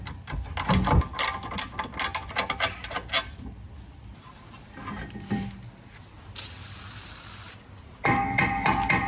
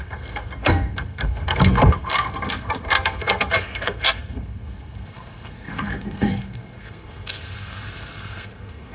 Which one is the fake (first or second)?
second